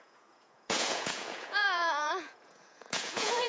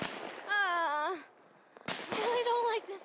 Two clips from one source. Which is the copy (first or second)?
first